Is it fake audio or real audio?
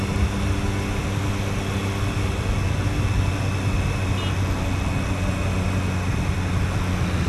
real